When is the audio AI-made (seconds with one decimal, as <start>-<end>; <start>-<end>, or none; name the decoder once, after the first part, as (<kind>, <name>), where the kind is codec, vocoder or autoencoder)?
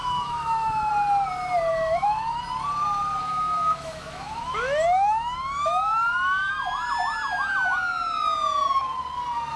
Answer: 0.0-0.9 (autoencoder, DAC-VAE); 1.7-2.4; 3.2-6.5